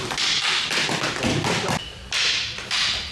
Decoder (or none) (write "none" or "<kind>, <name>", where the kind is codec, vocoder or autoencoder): vocoder, BigVGAN v2